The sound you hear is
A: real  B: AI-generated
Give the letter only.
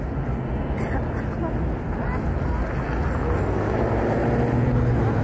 A